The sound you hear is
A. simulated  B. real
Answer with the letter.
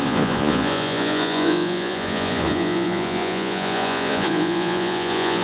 A